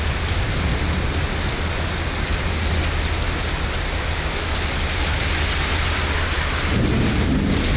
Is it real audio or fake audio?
real